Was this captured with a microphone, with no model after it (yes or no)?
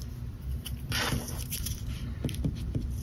no